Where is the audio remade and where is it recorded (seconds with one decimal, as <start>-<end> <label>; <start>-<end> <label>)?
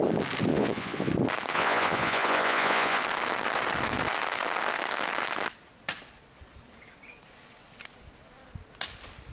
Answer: 0.0-0.5 recorded; 0.5-1.1 remade; 1.1-1.5 recorded; 1.5-3.0 remade; 3.0-9.3 recorded